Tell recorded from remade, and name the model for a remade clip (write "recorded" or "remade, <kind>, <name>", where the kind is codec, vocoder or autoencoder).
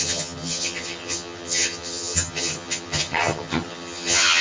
remade, vocoder, HiFi-GAN